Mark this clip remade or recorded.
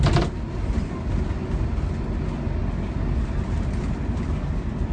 recorded